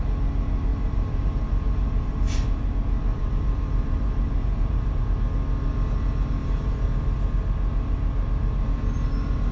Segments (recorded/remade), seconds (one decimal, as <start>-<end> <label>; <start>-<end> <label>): 0.0-0.7 recorded; 0.7-2.7 remade; 2.7-3.1 recorded; 3.1-5.0 remade; 5.0-6.4 recorded; 6.4-6.9 remade; 6.9-9.5 recorded